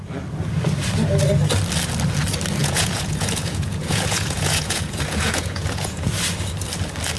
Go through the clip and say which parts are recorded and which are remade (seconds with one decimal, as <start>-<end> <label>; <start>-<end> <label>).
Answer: 0.0-2.6 recorded; 2.6-6.1 remade; 6.1-7.2 recorded

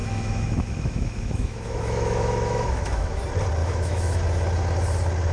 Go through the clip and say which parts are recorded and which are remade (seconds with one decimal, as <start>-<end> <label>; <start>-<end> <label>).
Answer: 0.0-3.2 remade; 3.2-3.6 recorded; 3.6-4.2 remade; 4.2-5.3 recorded

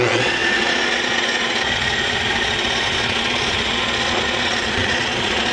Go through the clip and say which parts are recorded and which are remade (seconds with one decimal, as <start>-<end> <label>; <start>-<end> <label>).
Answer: 0.0-5.5 remade

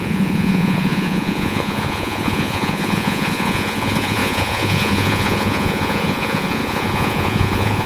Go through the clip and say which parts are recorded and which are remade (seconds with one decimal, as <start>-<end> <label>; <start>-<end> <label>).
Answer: 0.0-7.9 remade

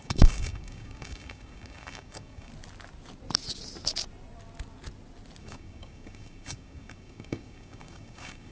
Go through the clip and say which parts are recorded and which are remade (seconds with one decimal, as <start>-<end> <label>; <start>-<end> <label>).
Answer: 0.0-2.5 remade; 2.5-5.4 recorded; 5.4-8.5 remade

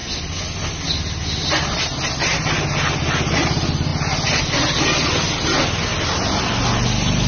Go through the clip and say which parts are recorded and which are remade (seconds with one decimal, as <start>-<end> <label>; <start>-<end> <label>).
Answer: 0.0-7.3 recorded